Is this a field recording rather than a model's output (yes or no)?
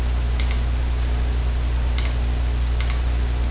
yes